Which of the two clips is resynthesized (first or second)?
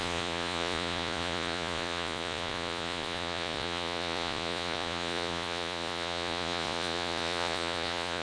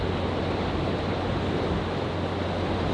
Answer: first